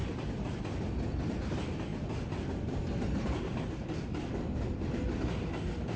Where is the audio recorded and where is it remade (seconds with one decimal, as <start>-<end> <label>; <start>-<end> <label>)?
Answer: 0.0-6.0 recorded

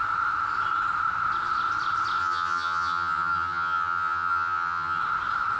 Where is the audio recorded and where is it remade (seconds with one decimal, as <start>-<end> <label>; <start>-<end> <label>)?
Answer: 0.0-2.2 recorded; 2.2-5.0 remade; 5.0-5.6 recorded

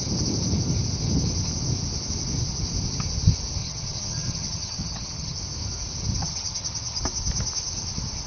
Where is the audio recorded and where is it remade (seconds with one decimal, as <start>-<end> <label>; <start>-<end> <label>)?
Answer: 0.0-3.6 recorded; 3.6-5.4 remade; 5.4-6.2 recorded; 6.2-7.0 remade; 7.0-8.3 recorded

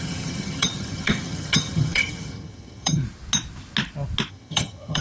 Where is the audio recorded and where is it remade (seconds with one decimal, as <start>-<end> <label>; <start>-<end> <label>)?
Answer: 0.0-3.0 remade; 3.0-4.3 recorded; 4.3-5.0 remade

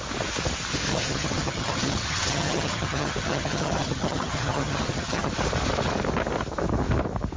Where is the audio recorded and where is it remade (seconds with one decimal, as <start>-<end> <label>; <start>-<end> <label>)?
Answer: 0.0-0.9 recorded; 0.9-5.3 remade; 5.3-7.4 recorded

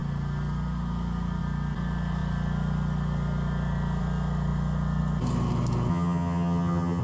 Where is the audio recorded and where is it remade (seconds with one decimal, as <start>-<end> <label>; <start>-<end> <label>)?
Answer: 0.0-5.9 recorded; 5.9-7.0 remade

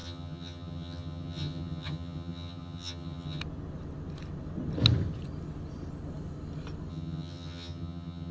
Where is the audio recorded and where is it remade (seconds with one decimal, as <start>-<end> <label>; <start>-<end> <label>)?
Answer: 0.0-3.4 remade; 3.4-6.9 recorded; 6.9-8.3 remade

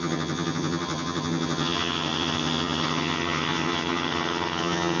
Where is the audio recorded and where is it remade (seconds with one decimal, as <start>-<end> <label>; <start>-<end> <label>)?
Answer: 0.0-5.0 remade